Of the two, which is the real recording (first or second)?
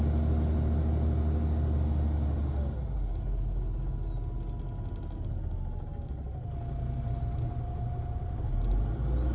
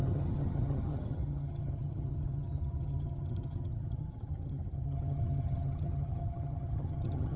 first